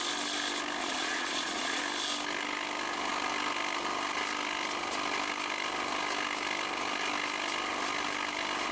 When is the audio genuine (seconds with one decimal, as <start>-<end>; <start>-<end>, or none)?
0.0-0.8; 1.8-8.7